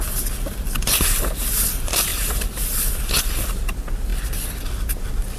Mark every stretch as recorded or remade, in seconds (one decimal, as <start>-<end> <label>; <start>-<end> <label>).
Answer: 0.0-2.1 recorded; 2.1-2.9 remade; 2.9-5.4 recorded